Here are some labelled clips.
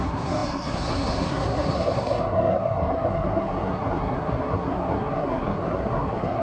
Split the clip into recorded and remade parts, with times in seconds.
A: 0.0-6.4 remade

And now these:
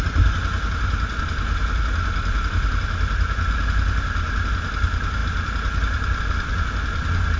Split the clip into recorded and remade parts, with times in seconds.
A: 0.0-7.4 recorded

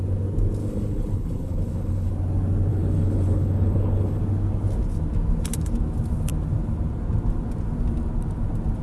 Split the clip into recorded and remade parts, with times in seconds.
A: 0.0-0.6 recorded; 0.6-2.1 remade; 2.1-2.7 recorded; 2.7-4.2 remade; 4.2-8.8 recorded

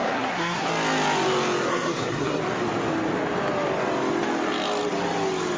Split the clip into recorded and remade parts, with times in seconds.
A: 0.0-0.7 remade; 0.7-1.7 recorded; 1.7-2.4 remade; 2.4-5.6 recorded